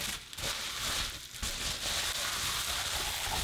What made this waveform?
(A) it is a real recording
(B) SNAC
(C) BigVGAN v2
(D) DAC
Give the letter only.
A